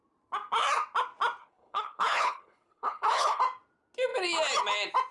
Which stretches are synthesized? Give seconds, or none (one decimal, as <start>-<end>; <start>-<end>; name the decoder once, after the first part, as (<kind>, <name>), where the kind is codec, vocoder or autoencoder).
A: 1.4-3.4 (codec, HILCodec)